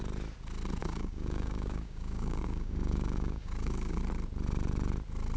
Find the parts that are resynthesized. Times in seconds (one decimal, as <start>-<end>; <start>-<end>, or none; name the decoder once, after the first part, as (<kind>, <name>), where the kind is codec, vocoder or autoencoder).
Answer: 0.8-4.0 (codec, DAC)